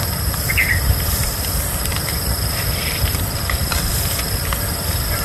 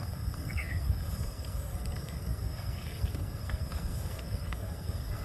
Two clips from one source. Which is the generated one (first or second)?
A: second